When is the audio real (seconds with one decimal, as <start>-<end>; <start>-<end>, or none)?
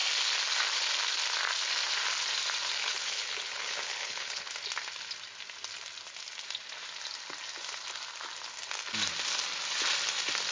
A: 0.0-2.8; 4.5-10.5